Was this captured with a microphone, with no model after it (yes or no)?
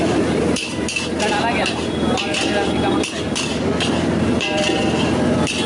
no